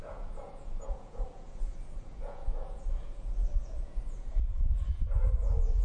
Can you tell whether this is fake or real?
fake